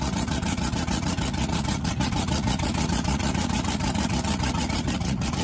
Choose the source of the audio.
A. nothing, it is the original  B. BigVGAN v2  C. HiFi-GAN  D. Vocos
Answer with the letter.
D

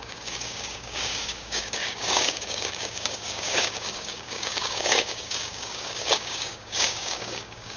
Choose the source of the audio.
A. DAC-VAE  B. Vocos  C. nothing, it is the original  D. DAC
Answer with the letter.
D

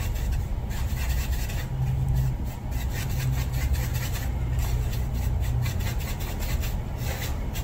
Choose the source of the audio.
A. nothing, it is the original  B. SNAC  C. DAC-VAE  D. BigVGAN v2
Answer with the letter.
A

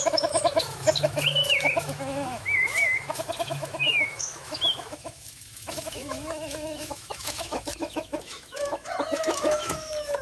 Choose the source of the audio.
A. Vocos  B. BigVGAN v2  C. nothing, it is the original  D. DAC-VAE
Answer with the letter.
D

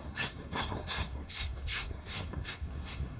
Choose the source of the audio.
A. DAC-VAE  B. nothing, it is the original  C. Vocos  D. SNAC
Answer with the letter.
D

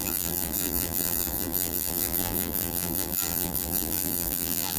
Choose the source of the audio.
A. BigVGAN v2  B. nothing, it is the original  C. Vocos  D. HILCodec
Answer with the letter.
A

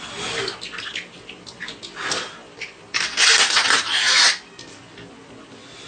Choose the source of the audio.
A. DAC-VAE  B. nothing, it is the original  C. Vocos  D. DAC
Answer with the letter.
B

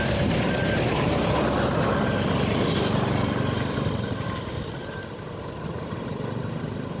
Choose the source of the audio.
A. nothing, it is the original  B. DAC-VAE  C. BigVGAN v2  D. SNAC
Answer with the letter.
C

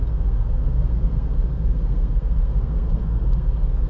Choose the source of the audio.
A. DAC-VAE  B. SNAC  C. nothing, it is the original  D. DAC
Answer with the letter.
B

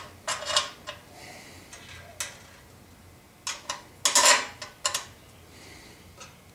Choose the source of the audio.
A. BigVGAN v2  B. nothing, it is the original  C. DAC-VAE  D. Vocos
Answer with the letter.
B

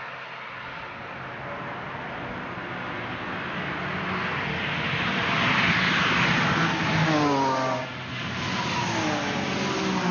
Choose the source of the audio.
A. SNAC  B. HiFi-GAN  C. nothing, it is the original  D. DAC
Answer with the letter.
C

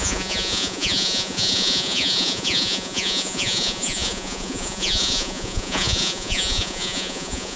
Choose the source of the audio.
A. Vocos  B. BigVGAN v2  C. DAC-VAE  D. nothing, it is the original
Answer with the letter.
A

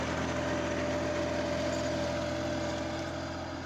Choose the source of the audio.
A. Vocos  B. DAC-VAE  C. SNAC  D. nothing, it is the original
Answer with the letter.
D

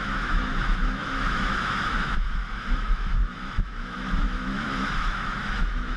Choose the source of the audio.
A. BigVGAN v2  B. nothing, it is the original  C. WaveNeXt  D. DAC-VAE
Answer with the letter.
D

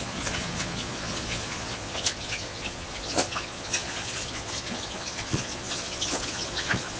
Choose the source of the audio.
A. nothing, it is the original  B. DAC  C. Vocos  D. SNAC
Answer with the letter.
C